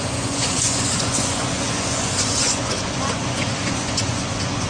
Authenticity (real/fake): fake